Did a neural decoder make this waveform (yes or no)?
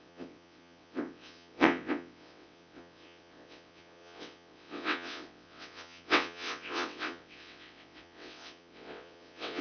yes